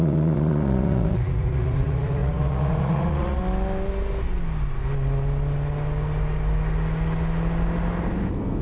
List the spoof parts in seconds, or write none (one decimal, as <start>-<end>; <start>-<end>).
0.0-3.4